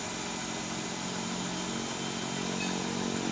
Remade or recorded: recorded